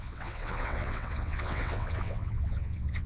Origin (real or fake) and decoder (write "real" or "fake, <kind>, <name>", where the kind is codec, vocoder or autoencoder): fake, vocoder, WaveNeXt